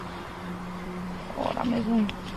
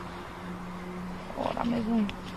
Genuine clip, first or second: second